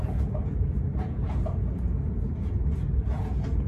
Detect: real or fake fake